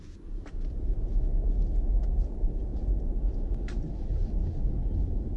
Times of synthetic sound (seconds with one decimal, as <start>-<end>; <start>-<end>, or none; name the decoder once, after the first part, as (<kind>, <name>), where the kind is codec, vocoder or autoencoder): 0.0-1.1 (vocoder, BigVGAN v2); 2.1-4.2